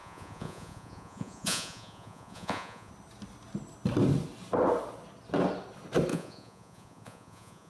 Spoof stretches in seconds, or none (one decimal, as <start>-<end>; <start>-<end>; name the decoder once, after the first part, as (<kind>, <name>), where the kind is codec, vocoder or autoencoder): 0.0-2.9 (vocoder, Vocos); 6.1-7.7